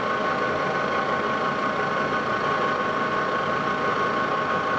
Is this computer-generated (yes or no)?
no